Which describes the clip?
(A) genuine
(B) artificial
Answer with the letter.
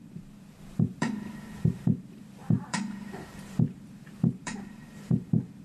B